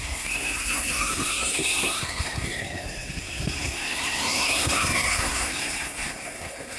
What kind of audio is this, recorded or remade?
remade